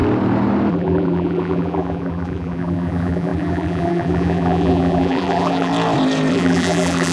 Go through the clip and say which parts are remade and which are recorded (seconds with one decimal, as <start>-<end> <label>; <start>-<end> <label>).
0.0-0.7 recorded; 0.7-5.7 remade; 5.7-6.3 recorded; 6.3-7.1 remade